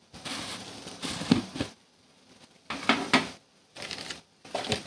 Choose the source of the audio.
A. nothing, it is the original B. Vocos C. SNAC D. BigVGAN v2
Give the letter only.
D